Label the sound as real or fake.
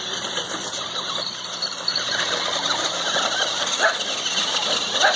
fake